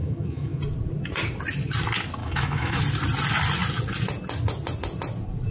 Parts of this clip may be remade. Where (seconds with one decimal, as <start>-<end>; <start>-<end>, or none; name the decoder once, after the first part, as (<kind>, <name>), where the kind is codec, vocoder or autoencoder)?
0.0-0.6 (autoencoder, DAC-VAE); 2.2-2.8